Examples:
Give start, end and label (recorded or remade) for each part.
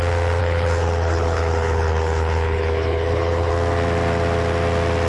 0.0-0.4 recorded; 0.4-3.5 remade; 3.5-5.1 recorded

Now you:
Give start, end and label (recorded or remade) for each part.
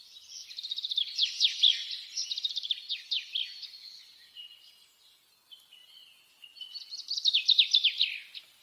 0.0-0.4 recorded; 0.4-1.0 remade; 1.0-1.8 recorded; 1.8-2.9 remade; 2.9-8.6 recorded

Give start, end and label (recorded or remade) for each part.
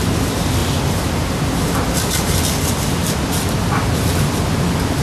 0.0-5.0 recorded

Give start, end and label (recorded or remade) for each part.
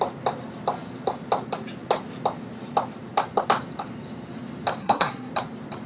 0.0-4.8 recorded; 4.8-5.3 remade; 5.3-5.9 recorded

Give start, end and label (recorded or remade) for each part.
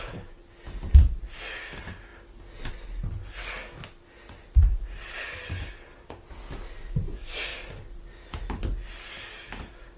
0.0-10.0 recorded